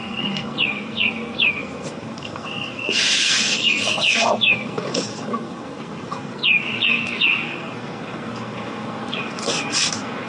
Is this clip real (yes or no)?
no